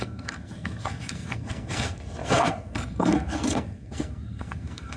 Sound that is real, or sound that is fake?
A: fake